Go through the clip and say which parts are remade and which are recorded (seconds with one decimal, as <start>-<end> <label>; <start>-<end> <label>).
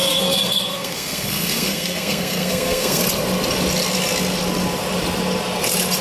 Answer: 0.0-3.0 remade; 3.0-6.0 recorded